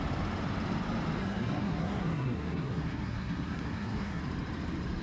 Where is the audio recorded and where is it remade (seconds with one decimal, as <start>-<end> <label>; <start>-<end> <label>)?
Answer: 0.0-1.2 recorded; 1.2-4.2 remade; 4.2-5.0 recorded